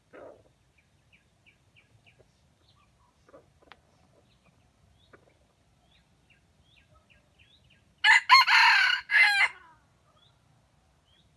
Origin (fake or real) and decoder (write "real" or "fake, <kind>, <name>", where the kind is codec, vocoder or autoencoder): real